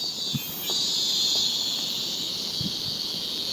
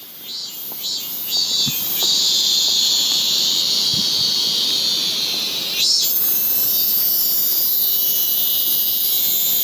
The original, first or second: first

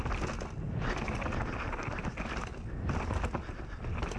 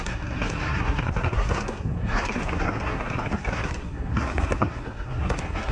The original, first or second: first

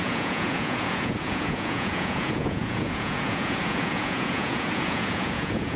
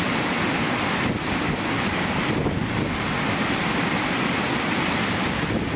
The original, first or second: second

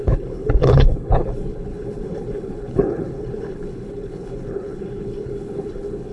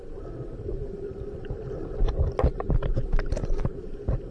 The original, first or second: second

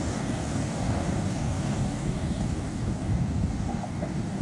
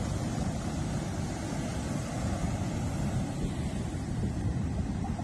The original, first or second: second